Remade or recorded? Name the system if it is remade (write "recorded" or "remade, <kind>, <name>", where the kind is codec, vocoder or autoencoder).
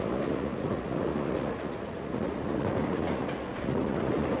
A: remade, vocoder, Vocos